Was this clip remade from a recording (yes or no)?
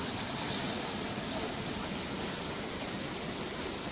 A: no